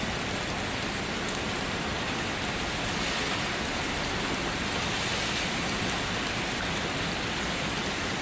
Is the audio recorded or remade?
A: recorded